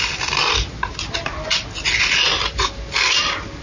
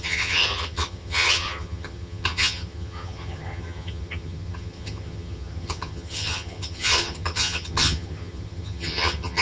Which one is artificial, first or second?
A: second